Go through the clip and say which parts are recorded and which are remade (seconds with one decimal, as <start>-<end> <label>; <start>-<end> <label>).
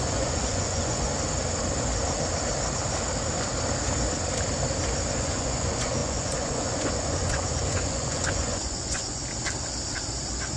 0.0-1.1 remade; 1.1-5.1 recorded; 5.1-9.2 remade; 9.2-10.6 recorded